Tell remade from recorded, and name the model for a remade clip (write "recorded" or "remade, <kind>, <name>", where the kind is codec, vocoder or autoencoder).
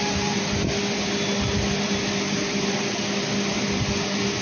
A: recorded